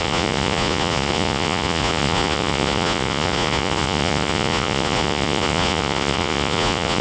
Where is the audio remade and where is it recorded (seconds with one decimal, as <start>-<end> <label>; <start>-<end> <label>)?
0.0-7.0 remade